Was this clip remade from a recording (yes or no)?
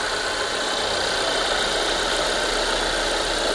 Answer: no